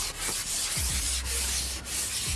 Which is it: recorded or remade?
recorded